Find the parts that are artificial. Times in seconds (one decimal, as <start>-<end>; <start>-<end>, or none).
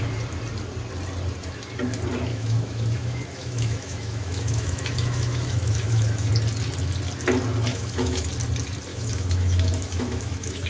2.3-6.3; 7.7-8.3; 8.9-10.7